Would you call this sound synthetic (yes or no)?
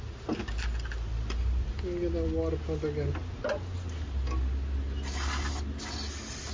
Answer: no